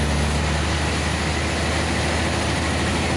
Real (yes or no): yes